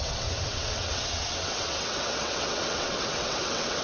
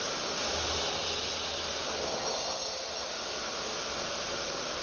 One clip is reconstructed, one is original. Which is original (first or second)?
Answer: second